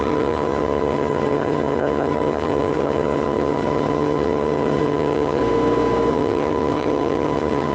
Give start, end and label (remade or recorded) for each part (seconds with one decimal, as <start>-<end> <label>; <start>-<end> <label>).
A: 0.0-5.4 remade; 5.4-6.1 recorded; 6.1-7.7 remade